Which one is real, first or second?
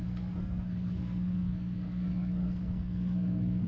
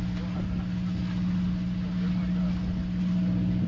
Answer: second